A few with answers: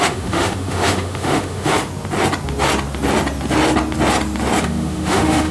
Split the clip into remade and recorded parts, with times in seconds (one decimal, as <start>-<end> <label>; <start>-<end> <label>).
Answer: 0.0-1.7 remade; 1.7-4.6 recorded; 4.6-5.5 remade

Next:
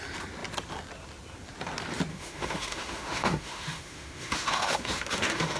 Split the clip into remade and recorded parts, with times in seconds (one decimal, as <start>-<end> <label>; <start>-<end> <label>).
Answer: 0.0-2.1 recorded; 2.1-5.6 remade

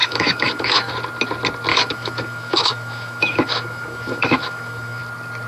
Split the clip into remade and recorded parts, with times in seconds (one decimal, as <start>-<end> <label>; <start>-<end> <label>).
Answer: 0.0-0.9 remade; 0.9-1.7 recorded; 1.7-5.0 remade; 5.0-5.5 recorded

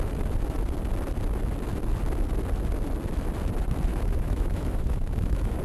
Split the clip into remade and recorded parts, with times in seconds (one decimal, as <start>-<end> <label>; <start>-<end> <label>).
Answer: 0.0-3.9 recorded; 3.9-5.6 remade

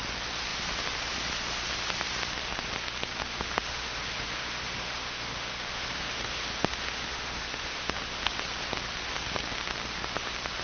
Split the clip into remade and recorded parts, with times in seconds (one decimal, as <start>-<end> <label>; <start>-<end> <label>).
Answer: 0.0-3.2 recorded; 3.2-8.2 remade; 8.2-10.6 recorded

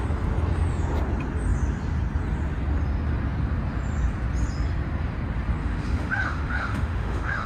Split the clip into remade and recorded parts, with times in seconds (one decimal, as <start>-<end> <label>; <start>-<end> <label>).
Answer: 0.0-5.6 recorded; 5.6-7.5 remade

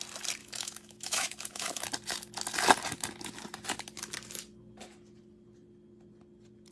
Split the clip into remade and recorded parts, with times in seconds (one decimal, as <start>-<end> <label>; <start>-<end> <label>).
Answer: 0.0-0.4 recorded; 0.4-1.8 remade; 1.8-6.7 recorded